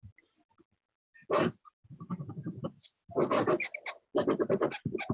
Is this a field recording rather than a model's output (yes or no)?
yes